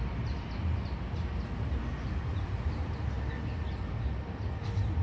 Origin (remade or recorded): recorded